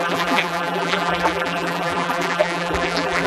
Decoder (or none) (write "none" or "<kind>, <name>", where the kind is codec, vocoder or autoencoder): vocoder, BigVGAN v2